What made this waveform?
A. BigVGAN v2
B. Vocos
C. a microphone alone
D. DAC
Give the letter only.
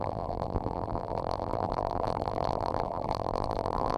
A